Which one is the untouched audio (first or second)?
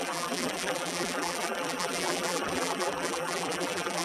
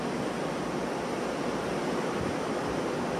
second